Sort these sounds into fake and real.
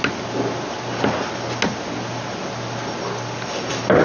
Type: real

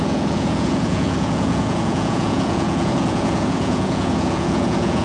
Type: fake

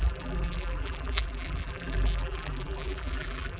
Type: fake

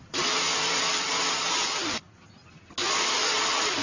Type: real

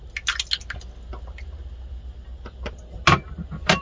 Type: real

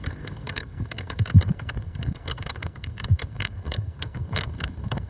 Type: fake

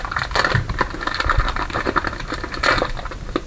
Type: fake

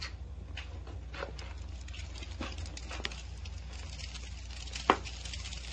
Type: real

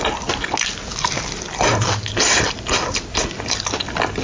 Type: real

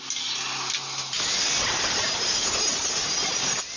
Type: real